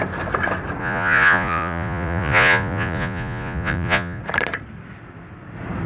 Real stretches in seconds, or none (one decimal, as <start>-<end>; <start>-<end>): 0.0-0.8; 4.2-5.9